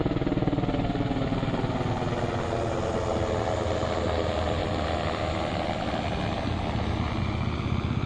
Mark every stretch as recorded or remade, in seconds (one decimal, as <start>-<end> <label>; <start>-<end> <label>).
0.0-8.1 recorded